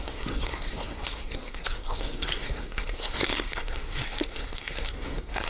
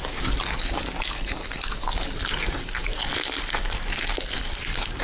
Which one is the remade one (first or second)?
first